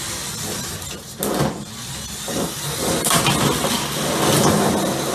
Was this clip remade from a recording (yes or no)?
no